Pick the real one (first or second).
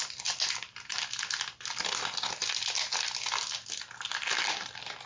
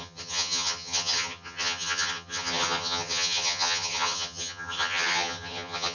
first